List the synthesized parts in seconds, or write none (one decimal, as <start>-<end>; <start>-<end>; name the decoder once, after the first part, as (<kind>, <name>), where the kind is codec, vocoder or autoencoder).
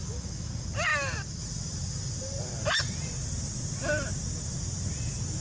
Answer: 0.0-0.5 (autoencoder, DAC-VAE)